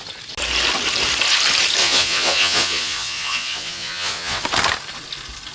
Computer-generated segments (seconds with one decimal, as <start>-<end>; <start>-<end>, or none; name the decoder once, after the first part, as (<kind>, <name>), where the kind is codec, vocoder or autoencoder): 1.8-4.4 (vocoder, Vocos)